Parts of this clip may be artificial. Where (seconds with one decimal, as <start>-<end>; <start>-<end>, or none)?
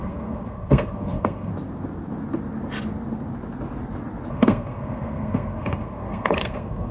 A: 0.0-1.5; 4.3-6.9